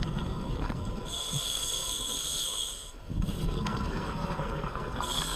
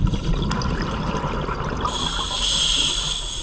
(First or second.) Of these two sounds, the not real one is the first